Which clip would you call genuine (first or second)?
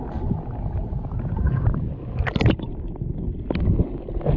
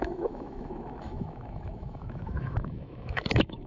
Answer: first